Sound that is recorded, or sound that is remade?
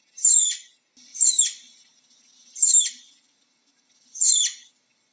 recorded